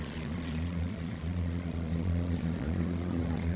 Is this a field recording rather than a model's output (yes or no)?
no